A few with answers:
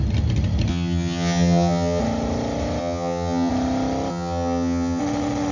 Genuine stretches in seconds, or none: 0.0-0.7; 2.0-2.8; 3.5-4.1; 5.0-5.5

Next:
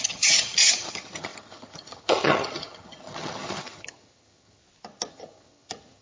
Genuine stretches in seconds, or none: 4.6-5.1

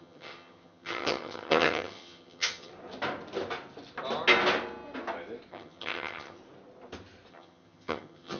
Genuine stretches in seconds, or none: 2.7-5.5; 6.4-7.3

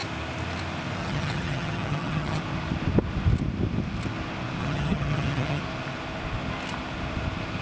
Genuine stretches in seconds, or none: 0.0-1.0; 2.4-4.6; 5.6-7.6